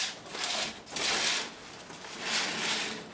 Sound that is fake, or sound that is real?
real